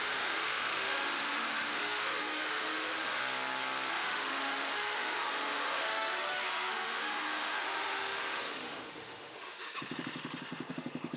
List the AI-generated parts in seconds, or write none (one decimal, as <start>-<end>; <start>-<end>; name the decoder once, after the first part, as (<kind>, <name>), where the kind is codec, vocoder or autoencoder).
0.0-3.2 (autoencoder, DAC-VAE); 3.9-11.2